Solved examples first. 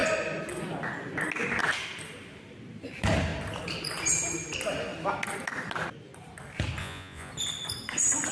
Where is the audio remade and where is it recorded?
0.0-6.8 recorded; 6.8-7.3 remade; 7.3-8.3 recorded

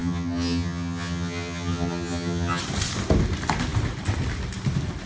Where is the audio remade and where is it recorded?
0.0-2.6 remade; 2.6-5.1 recorded

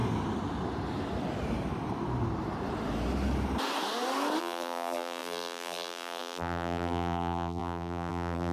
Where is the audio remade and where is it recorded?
0.0-4.4 recorded; 4.4-8.5 remade

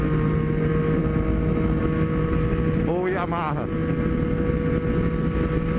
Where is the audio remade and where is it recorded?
0.0-5.8 recorded

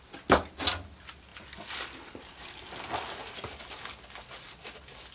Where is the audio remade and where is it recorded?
0.0-5.1 recorded

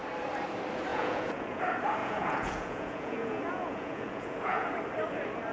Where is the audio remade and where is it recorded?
0.0-0.9 recorded; 0.9-1.6 remade; 1.6-2.0 recorded; 2.0-4.7 remade; 4.7-5.5 recorded